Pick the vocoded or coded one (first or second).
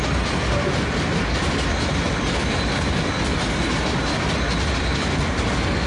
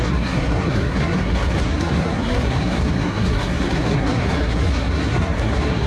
second